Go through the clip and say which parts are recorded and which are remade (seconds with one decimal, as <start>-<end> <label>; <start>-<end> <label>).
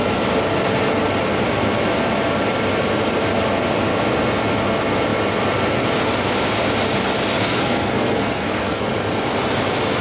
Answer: 0.0-7.4 recorded; 7.4-8.8 remade; 8.8-10.0 recorded